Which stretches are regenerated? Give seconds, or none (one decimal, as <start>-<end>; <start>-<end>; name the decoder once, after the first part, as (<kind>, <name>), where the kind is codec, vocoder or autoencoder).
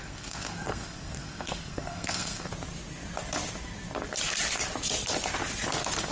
0.0-2.5 (codec, SNAC)